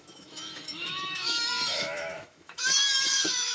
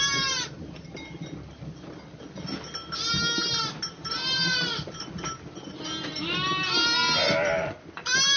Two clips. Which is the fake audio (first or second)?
first